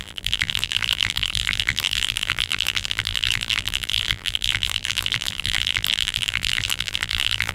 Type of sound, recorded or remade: remade